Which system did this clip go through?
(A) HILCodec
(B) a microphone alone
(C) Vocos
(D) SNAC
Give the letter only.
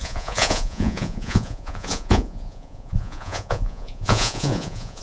C